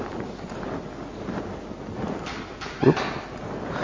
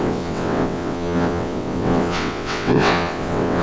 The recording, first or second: first